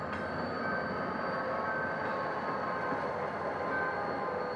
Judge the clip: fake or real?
fake